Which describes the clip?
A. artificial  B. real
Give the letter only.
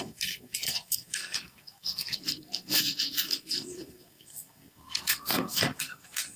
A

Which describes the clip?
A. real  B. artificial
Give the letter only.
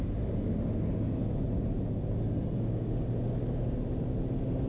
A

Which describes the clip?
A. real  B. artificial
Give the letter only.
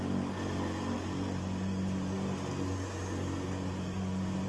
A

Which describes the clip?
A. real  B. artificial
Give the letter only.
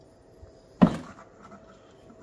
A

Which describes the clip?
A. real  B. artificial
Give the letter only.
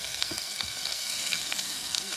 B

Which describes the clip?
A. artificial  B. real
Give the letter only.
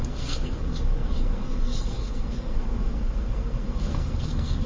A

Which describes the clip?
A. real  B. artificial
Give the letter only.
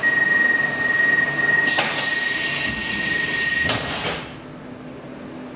A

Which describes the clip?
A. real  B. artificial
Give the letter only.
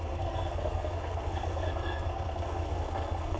B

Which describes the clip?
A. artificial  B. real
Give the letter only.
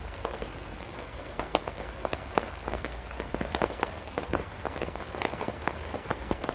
A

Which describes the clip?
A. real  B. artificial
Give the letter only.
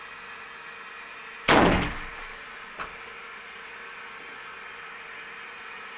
A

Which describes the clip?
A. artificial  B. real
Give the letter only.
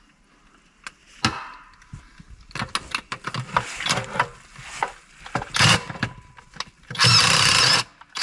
B